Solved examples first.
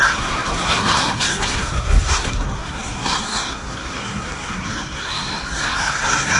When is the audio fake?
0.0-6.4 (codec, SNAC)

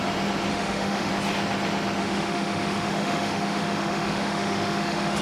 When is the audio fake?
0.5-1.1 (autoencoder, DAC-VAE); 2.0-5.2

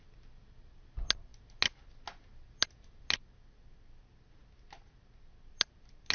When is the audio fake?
none